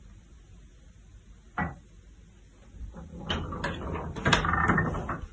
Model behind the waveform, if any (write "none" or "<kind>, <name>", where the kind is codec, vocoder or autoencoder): none